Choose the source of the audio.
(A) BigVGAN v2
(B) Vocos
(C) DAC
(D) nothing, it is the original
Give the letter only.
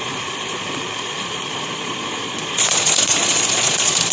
B